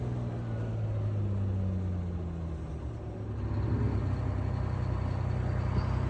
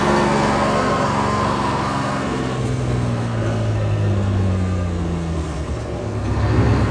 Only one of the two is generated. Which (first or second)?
second